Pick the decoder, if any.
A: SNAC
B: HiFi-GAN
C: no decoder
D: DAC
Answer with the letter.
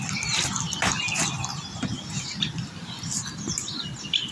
C